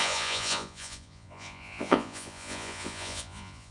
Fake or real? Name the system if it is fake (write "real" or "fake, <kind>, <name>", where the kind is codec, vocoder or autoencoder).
fake, vocoder, Vocos